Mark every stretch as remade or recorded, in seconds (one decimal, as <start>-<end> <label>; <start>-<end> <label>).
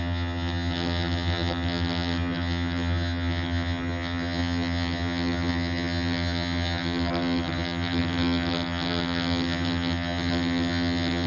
0.0-11.3 remade